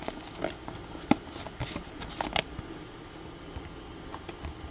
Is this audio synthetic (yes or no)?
no